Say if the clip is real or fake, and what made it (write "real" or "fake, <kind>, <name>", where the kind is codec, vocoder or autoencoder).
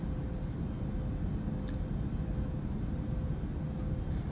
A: real